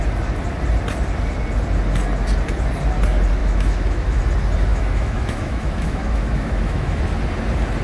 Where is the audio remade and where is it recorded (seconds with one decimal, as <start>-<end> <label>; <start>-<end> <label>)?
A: 0.0-3.4 recorded; 3.4-4.2 remade; 4.2-4.7 recorded; 4.7-7.0 remade; 7.0-7.8 recorded